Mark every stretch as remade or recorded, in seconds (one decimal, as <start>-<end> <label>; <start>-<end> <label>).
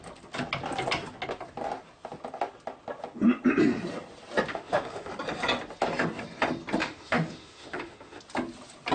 0.0-4.5 recorded; 4.5-5.1 remade; 5.1-6.8 recorded; 6.8-8.2 remade; 8.2-8.9 recorded